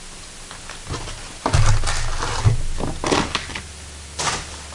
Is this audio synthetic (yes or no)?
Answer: no